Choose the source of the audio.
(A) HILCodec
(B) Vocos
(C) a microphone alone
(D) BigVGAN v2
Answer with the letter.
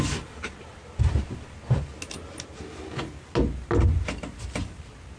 C